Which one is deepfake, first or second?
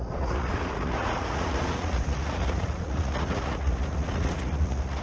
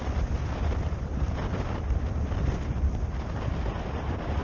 first